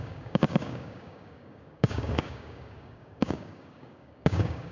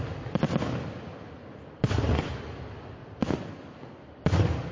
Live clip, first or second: second